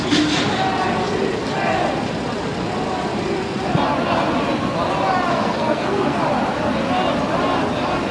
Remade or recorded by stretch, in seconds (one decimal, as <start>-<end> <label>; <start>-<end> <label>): 0.0-5.3 recorded; 5.3-6.2 remade; 6.2-8.1 recorded